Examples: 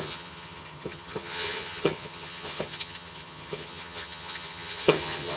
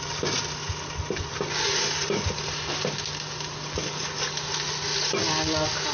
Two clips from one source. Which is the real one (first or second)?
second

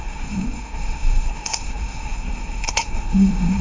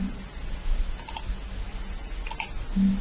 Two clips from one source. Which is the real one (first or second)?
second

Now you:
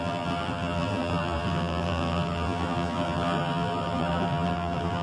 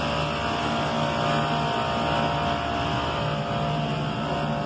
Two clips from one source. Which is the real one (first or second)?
second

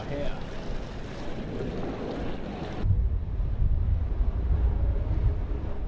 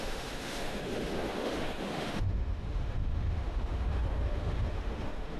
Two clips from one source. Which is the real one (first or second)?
first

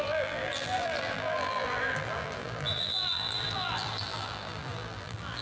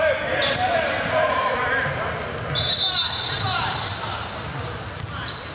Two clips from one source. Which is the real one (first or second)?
second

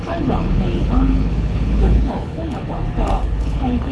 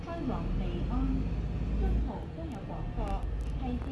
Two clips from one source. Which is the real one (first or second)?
second